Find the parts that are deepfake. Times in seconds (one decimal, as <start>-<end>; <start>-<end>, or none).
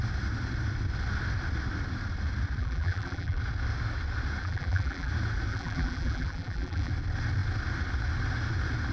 2.6-3.4; 4.4-5.1; 5.5-6.9